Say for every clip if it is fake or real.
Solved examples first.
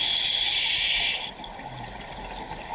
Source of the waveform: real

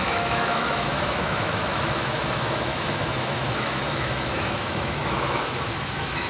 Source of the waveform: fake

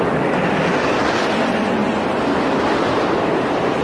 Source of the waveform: real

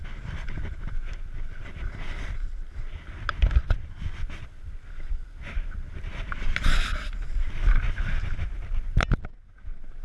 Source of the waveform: real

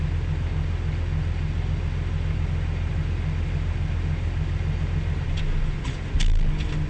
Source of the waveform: real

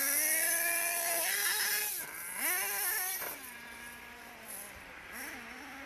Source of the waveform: real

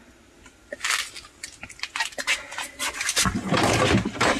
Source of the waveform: real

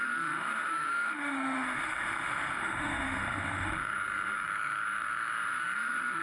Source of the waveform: fake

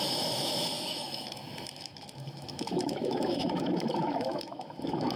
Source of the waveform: fake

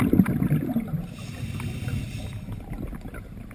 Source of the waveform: real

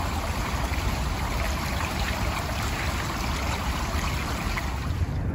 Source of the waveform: real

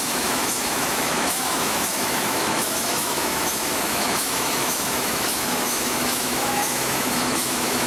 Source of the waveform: fake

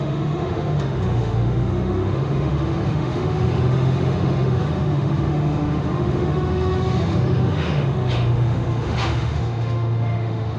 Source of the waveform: fake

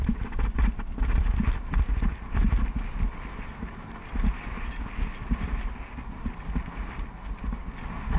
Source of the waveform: real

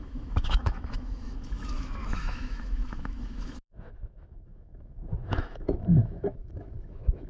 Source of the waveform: fake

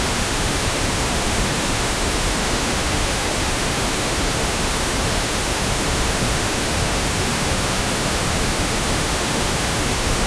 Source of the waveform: fake